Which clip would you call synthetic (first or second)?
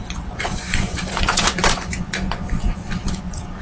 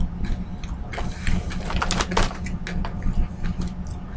first